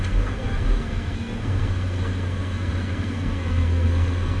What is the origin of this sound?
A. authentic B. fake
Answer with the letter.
B